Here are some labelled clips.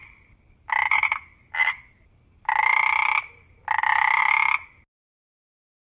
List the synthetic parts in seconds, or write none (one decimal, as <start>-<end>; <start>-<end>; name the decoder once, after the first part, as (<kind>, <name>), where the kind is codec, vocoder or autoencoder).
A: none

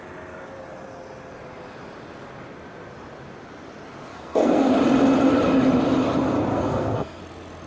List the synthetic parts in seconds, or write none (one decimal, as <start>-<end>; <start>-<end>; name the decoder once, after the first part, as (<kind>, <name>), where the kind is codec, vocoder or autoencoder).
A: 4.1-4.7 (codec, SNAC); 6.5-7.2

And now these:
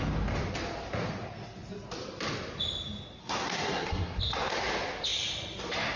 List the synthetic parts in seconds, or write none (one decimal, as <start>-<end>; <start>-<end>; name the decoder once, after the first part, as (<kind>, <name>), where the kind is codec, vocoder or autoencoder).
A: 3.2-4.2 (codec, SNAC)